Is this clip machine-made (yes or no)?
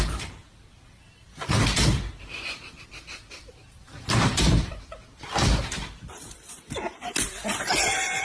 yes